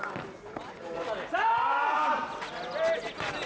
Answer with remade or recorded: recorded